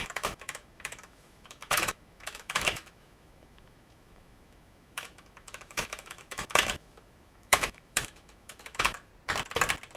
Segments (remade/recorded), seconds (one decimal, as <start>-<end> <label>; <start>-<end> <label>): 0.0-9.1 remade; 9.1-10.0 recorded